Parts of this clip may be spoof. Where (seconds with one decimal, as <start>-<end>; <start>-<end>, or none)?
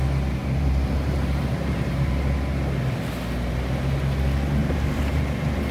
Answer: 0.4-2.1; 4.6-5.7